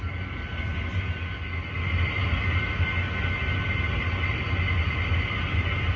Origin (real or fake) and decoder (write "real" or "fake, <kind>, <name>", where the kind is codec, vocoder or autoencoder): real